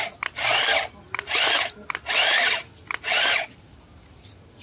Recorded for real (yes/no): yes